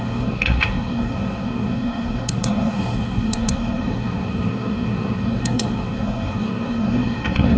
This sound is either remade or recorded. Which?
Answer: remade